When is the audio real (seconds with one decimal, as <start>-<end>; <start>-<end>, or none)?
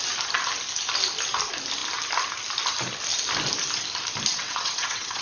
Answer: 0.0-4.3